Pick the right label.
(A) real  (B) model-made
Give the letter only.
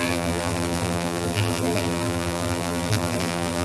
B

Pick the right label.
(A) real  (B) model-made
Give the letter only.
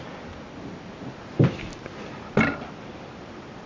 A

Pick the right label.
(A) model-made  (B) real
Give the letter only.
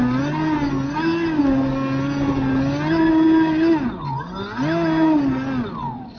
B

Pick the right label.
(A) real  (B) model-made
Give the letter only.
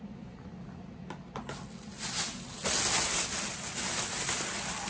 A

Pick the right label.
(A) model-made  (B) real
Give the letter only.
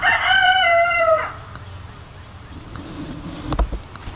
A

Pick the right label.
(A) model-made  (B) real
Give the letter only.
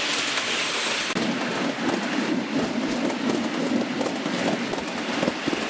B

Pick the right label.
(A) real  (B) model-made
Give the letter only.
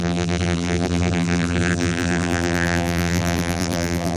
B